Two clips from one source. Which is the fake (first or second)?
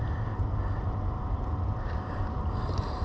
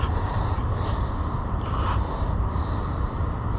second